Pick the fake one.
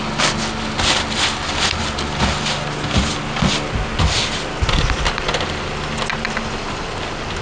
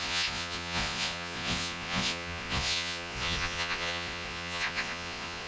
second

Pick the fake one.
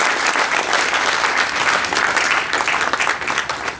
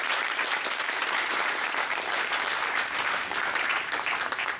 second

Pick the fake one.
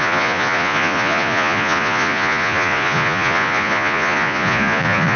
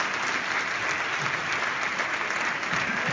first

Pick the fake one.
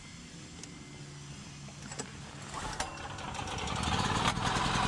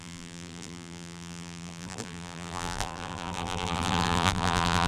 second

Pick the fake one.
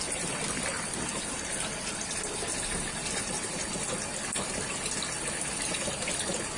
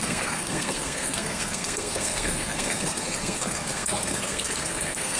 second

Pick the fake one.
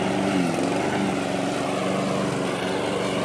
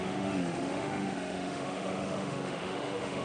second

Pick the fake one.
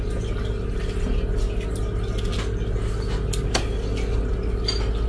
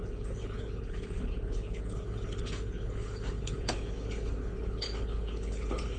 second